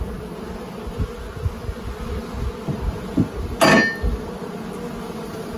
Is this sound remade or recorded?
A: recorded